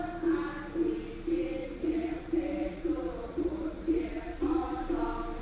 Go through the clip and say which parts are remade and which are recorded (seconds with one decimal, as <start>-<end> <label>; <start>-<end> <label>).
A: 0.0-1.6 recorded; 1.6-4.8 remade; 4.8-5.4 recorded